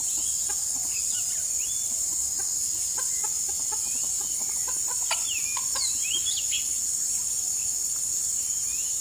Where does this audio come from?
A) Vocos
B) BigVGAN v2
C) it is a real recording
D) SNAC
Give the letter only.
C